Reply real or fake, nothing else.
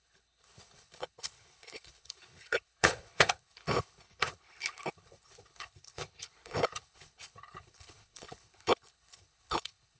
fake